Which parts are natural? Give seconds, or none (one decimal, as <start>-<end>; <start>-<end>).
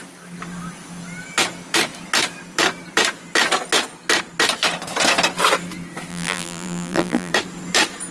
0.0-6.1; 7.3-8.1